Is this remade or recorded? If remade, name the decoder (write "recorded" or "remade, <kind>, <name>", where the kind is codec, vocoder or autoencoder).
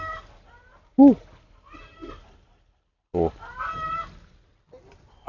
recorded